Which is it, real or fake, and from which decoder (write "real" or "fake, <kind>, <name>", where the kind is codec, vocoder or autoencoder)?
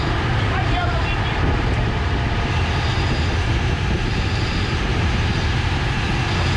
fake, vocoder, BigVGAN v2